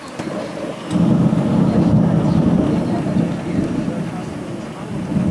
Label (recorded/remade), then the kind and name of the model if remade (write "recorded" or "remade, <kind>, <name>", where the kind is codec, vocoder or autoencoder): recorded